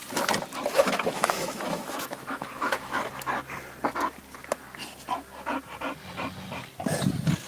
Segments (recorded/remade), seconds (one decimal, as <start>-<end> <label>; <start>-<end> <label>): 0.0-0.7 recorded; 0.7-3.1 remade; 3.1-7.5 recorded